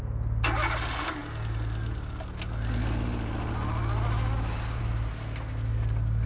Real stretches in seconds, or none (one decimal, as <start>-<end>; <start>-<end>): 0.0-6.3